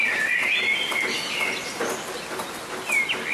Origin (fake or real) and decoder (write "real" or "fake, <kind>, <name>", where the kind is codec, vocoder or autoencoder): real